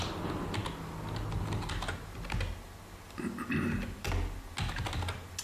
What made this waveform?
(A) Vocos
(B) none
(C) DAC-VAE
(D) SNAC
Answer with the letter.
B